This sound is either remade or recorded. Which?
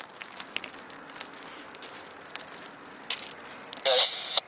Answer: recorded